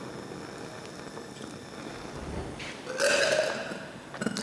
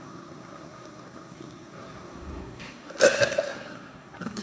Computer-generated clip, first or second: second